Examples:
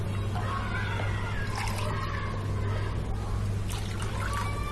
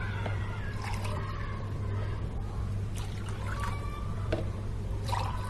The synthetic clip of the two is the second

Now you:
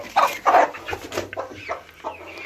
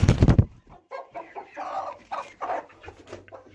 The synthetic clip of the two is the second